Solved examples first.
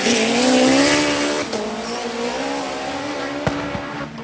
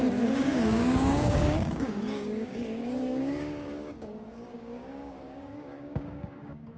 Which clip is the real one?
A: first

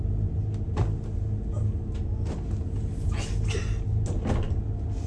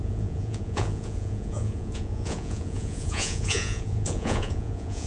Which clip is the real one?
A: first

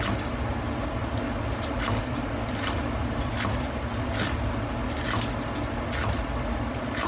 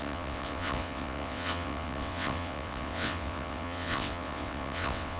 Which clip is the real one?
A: first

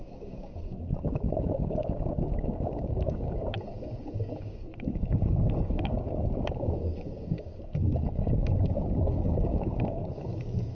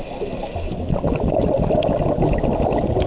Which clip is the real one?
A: second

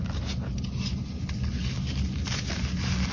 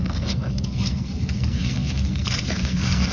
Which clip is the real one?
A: first